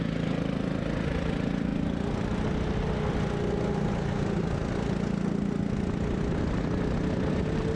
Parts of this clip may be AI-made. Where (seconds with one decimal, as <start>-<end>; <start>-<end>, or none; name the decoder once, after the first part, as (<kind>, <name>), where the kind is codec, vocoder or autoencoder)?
none